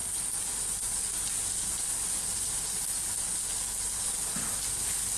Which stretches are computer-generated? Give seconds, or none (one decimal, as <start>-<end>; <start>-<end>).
none